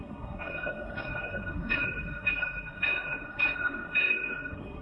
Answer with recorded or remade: remade